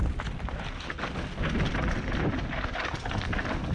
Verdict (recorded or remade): recorded